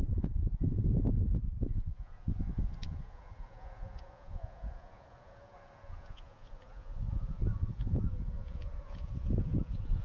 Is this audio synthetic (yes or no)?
yes